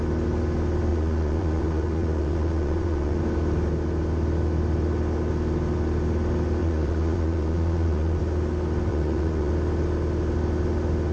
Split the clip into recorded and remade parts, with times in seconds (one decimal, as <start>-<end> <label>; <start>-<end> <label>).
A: 0.0-0.9 recorded; 0.9-3.2 remade; 3.2-6.6 recorded; 6.6-8.2 remade; 8.2-8.9 recorded; 8.9-9.5 remade; 9.5-11.1 recorded